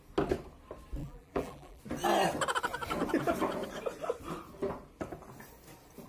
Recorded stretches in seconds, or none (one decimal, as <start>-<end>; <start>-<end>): 0.0-1.0; 1.8-6.1